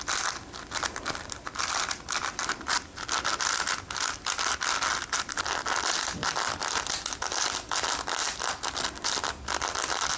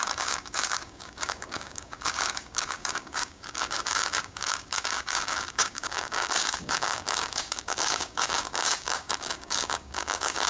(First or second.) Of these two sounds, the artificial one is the second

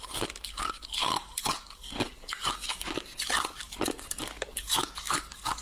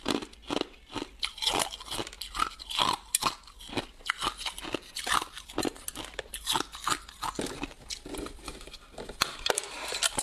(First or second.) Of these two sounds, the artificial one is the first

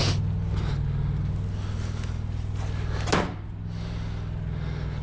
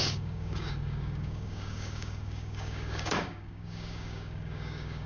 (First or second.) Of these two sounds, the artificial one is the second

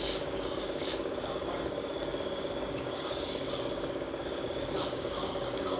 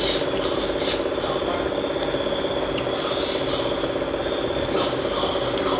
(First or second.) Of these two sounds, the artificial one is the first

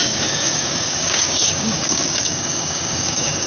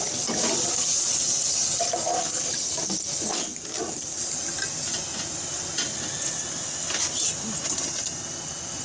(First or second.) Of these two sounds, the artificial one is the first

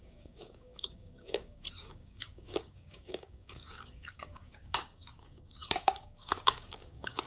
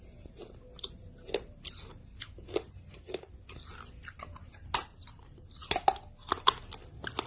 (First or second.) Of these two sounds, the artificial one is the first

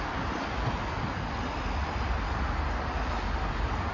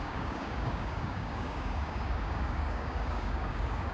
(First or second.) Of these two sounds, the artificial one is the second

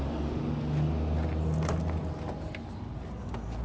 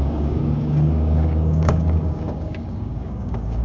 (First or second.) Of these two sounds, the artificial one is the second